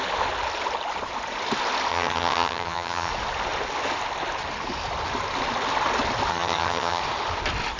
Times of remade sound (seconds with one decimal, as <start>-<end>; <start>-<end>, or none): 1.9-3.1; 6.3-7.0